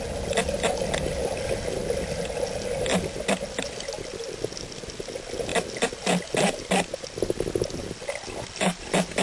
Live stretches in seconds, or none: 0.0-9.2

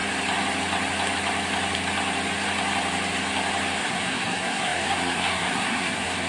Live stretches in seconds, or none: 0.0-3.8

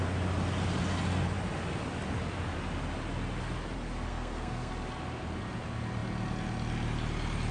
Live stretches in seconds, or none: 0.0-4.1; 4.7-7.5

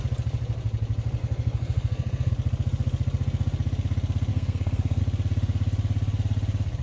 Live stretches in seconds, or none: 0.0-1.2; 2.3-4.3; 5.0-6.8

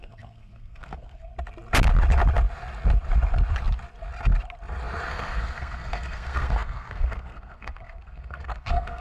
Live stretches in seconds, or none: 1.3-5.1

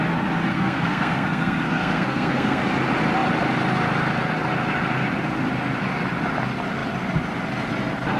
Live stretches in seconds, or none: 0.0-0.5; 2.6-8.2

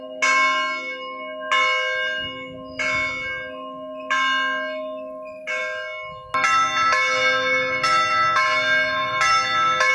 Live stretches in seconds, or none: 0.0-9.9